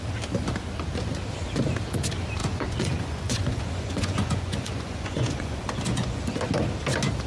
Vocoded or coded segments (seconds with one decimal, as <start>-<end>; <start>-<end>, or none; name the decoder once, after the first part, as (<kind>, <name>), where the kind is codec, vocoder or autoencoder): 2.4-6.2 (vocoder, Vocos)

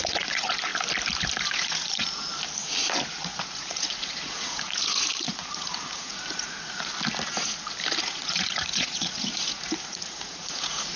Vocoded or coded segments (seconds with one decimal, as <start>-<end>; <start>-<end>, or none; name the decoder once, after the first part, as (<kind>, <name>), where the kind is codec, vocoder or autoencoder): 0.0-0.7 (vocoder, Vocos); 1.4-2.3; 3.1-6.9; 8.0-11.0

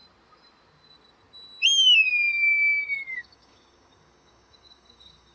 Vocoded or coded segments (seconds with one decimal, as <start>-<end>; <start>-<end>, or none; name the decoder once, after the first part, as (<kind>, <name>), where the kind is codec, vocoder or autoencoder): 3.1-5.3 (codec, DAC)

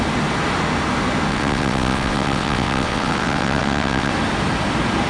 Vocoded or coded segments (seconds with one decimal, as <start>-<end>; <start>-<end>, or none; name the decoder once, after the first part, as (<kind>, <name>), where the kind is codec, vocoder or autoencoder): 1.3-4.1 (vocoder, WaveNeXt)

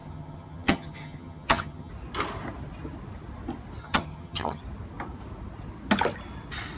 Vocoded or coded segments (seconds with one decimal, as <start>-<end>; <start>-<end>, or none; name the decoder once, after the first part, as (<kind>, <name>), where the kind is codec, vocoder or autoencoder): 0.0-1.9 (vocoder, HiFi-GAN); 3.8-4.6

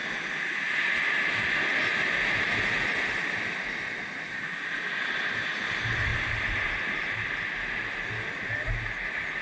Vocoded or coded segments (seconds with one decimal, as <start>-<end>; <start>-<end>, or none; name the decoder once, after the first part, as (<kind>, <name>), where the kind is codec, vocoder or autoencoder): none

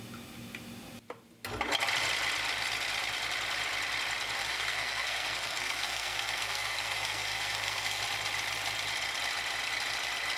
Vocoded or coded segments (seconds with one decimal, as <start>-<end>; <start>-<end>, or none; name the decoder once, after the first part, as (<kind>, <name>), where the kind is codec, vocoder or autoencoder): 4.4-8.0 (codec, SNAC)